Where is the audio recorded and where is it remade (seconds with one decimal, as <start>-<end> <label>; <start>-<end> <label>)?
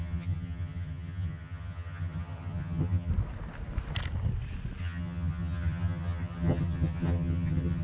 0.0-3.1 remade; 3.1-4.8 recorded; 4.8-7.8 remade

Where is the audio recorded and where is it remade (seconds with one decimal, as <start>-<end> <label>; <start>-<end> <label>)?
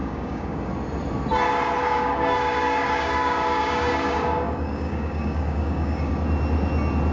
0.0-0.7 remade; 0.7-1.8 recorded; 1.8-6.1 remade; 6.1-7.1 recorded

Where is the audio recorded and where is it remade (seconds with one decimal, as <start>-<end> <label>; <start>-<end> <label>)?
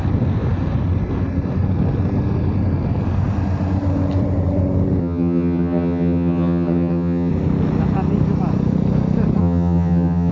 0.0-5.0 recorded; 5.0-7.3 remade; 7.3-9.4 recorded; 9.4-10.3 remade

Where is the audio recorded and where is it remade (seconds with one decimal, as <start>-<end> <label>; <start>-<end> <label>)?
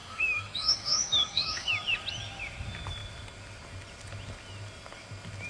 0.0-1.7 remade; 1.7-5.5 recorded